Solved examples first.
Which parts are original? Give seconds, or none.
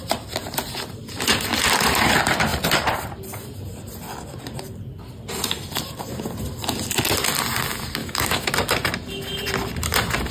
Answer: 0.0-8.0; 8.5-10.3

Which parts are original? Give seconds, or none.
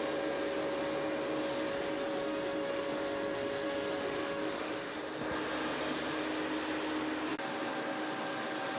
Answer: 0.0-1.7; 5.0-8.8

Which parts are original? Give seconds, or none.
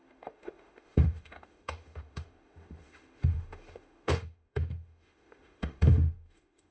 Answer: none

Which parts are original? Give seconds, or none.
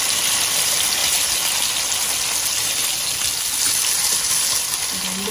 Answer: 0.0-5.3